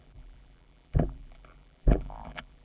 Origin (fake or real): fake